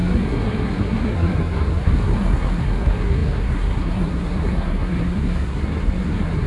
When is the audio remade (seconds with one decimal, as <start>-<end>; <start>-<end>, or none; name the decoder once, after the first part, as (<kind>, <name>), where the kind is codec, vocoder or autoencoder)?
0.0-6.5 (codec, SNAC)